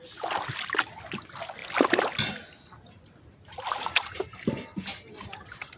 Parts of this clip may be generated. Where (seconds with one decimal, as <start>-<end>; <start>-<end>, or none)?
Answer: none